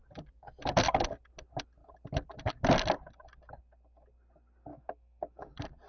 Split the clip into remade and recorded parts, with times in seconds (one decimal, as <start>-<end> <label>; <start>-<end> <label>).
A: 0.0-4.7 recorded; 4.7-5.5 remade; 5.5-5.9 recorded